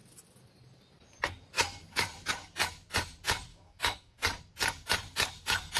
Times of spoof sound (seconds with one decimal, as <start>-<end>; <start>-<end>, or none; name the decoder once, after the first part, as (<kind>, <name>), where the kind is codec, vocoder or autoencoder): 3.5-4.2 (autoencoder, DAC-VAE)